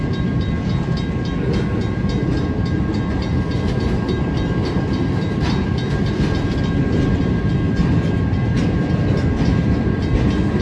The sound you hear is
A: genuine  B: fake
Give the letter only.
A